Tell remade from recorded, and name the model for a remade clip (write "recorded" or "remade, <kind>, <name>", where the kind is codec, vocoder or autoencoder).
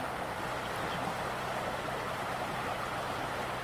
remade, vocoder, BigVGAN v2